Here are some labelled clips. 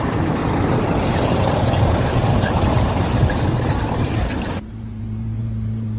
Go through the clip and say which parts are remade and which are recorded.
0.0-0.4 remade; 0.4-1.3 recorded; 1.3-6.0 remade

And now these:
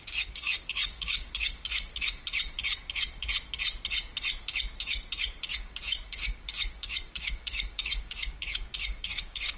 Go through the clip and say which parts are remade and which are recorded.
0.0-2.3 remade; 2.3-5.2 recorded; 5.2-9.6 remade